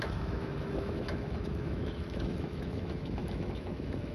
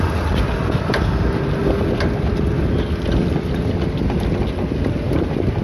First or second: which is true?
second